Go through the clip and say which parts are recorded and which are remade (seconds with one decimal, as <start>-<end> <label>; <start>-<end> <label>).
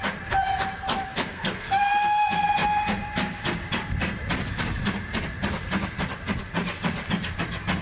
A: 0.0-1.3 recorded; 1.3-1.8 remade; 1.8-7.8 recorded